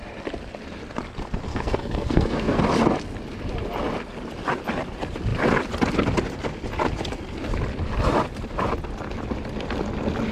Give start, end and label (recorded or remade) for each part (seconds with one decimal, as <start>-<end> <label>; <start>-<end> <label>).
0.0-1.5 recorded; 1.5-2.6 remade; 2.6-10.3 recorded